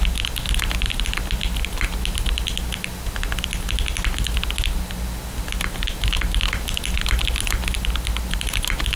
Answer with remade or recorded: recorded